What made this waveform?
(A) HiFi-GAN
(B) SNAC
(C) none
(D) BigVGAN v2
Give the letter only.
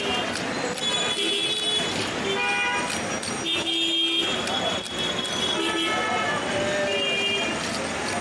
C